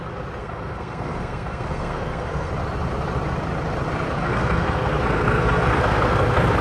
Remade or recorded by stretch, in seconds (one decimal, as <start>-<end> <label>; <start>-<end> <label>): 0.0-0.4 recorded; 0.4-2.5 remade; 2.5-4.2 recorded; 4.2-6.6 remade